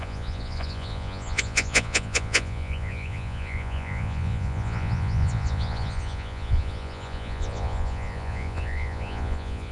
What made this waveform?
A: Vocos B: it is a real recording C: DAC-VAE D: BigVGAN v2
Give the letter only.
A